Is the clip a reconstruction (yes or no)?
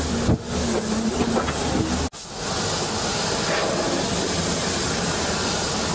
no